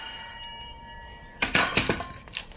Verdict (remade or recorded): remade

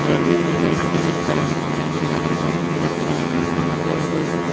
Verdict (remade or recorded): remade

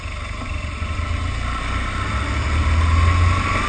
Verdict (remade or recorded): recorded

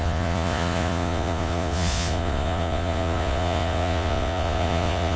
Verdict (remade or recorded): remade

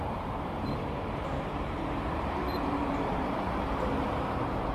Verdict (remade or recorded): remade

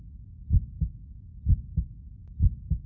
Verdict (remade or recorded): recorded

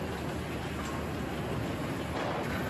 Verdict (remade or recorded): recorded